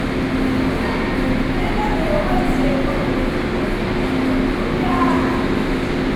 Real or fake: real